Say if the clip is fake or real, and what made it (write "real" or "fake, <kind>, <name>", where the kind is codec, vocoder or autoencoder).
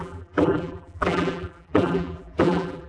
fake, vocoder, BigVGAN v2